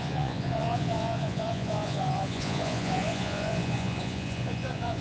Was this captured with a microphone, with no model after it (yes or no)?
no